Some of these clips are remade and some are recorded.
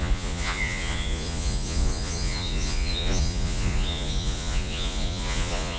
remade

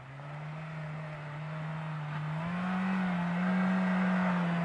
recorded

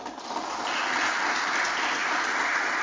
recorded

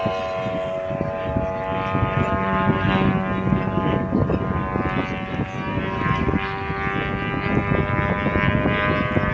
recorded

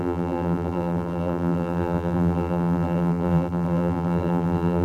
remade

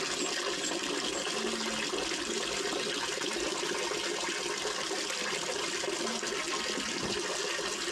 recorded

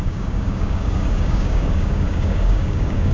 remade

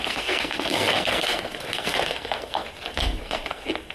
remade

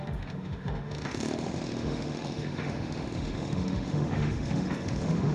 remade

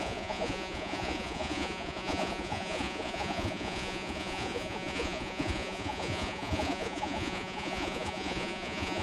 remade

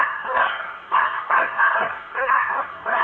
remade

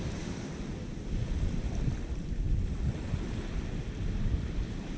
recorded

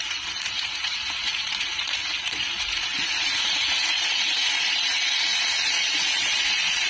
remade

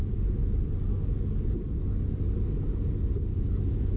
recorded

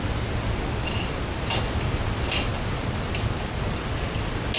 recorded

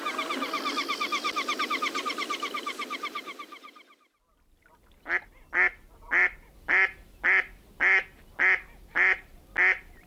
recorded